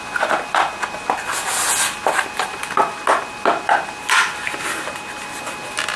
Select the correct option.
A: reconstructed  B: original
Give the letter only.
B